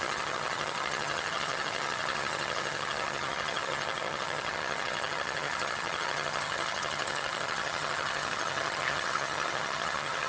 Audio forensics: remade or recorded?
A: remade